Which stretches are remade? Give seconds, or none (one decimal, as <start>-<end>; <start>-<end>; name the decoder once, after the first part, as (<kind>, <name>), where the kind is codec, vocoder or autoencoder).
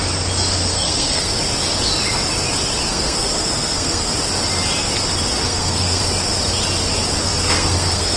0.7-1.3 (codec, SNAC); 2.8-4.1; 5.4-6.0; 7.3-8.2